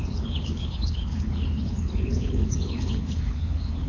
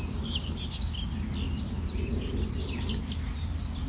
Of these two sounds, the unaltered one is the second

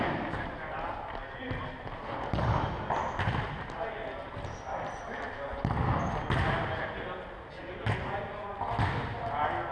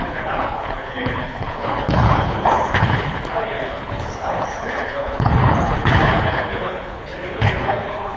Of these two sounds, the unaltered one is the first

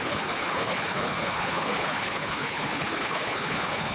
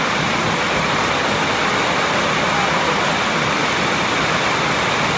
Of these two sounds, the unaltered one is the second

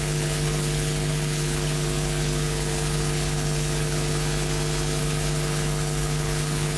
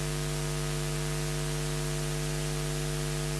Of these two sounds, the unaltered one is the second